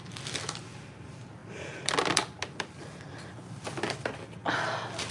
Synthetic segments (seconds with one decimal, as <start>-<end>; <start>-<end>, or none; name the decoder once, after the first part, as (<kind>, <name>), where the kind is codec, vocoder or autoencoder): none